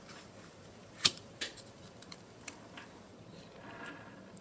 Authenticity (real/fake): fake